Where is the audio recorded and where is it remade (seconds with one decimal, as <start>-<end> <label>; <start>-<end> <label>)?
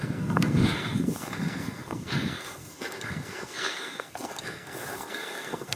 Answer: 0.0-5.8 remade